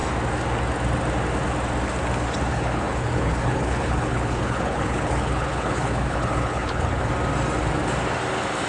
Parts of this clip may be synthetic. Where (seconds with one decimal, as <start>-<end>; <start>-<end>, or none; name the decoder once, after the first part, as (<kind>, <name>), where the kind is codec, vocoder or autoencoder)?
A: 2.5-7.1 (codec, HILCodec)